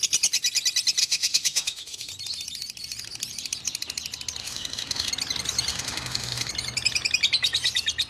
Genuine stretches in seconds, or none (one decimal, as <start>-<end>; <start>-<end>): 0.0-1.0; 2.1-4.4; 5.1-5.7; 6.5-8.1